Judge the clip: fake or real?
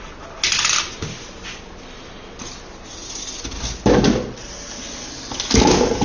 real